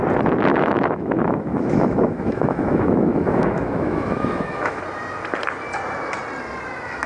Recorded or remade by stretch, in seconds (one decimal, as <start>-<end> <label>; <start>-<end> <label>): 0.0-0.5 recorded; 0.5-4.8 remade; 4.8-7.1 recorded